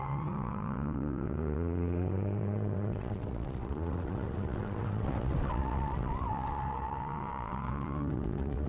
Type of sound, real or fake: fake